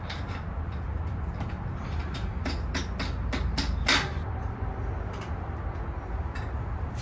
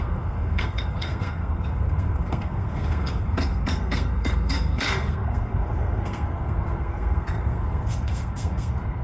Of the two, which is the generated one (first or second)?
second